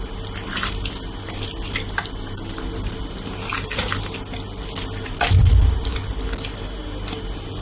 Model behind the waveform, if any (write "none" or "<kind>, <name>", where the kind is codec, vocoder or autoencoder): none